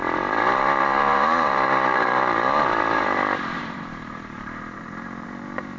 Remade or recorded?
remade